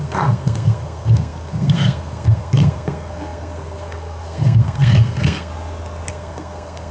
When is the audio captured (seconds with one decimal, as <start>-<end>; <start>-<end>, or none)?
5.5-6.1